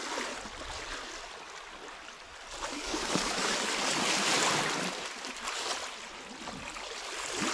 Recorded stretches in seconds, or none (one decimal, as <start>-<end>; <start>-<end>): 0.0-2.7; 3.5-7.5